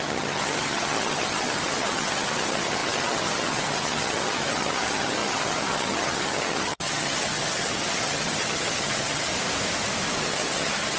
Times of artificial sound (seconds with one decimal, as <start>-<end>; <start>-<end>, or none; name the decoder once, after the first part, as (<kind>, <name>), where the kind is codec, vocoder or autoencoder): 0.0-9.3 (vocoder, HiFi-GAN); 10.2-11.0